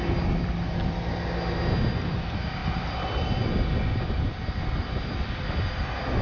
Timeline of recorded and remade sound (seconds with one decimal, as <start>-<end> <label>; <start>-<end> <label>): 0.0-6.2 recorded